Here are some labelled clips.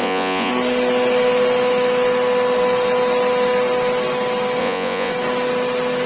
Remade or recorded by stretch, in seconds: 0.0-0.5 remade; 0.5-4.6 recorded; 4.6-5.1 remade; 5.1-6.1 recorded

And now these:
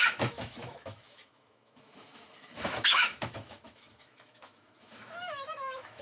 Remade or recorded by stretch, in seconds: 0.0-6.0 remade